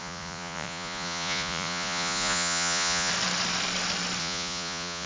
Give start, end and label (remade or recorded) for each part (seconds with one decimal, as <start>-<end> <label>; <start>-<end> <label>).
0.0-3.1 remade; 3.1-4.2 recorded; 4.2-5.1 remade